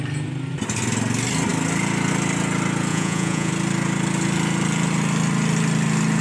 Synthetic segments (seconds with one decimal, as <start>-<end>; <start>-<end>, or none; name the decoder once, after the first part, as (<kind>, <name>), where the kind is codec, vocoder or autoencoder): 2.9-3.5 (vocoder, Vocos)